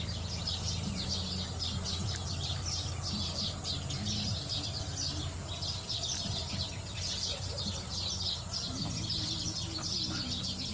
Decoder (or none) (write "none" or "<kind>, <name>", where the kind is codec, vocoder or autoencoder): none